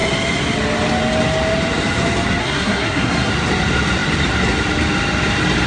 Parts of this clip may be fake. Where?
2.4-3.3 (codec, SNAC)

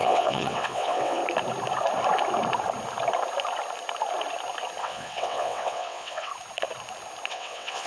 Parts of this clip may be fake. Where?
0.0-1.2 (vocoder, WaveNeXt); 4.8-6.3; 7.3-7.9

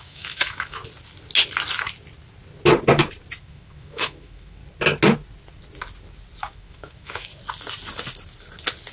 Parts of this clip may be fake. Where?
0.0-0.8 (autoencoder, DAC-VAE); 3.4-4.6; 6.4-7.3

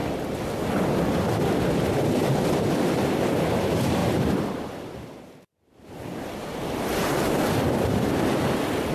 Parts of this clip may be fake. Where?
2.9-4.0 (vocoder, BigVGAN v2)